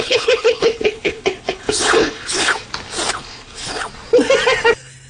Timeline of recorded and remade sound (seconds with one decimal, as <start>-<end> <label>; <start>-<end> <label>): 0.0-2.5 remade; 2.5-3.1 recorded; 3.1-3.8 remade; 3.8-5.1 recorded